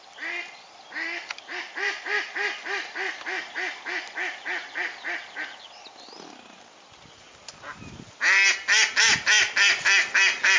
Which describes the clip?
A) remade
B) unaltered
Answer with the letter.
B